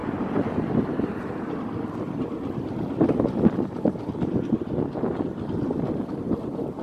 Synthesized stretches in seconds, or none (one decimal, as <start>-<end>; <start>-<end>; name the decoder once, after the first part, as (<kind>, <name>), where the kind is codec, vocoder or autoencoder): none